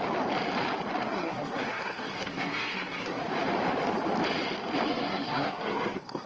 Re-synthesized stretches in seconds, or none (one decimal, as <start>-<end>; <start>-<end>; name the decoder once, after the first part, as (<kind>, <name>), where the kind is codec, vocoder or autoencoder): 1.0-3.2 (codec, SNAC); 4.9-6.3